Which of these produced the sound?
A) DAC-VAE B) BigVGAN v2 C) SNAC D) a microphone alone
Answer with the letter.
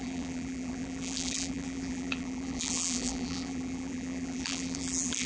B